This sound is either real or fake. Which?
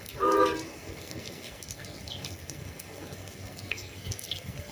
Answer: fake